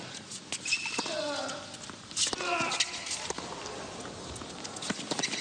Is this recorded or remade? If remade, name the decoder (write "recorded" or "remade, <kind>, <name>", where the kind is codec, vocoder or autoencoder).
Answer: recorded